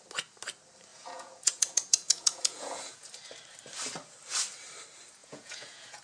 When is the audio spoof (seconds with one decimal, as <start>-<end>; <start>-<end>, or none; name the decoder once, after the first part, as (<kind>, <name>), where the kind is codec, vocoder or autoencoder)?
0.9-3.1 (vocoder, Vocos); 5.2-6.0